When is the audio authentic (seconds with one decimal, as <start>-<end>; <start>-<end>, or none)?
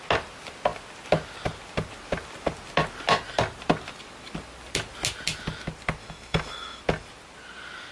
0.0-6.0; 6.8-7.9